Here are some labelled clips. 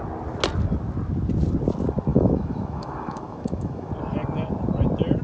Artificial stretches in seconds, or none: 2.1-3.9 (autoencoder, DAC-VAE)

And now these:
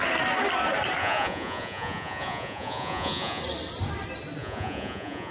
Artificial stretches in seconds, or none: 1.0-3.4 (vocoder, Vocos); 4.4-5.3

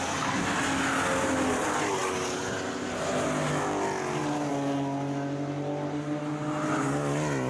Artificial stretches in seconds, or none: none

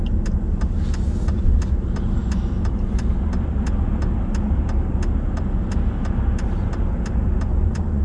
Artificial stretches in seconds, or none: 7.5-8.0 (vocoder, Vocos)